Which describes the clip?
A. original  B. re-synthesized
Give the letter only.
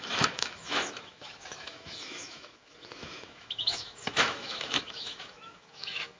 B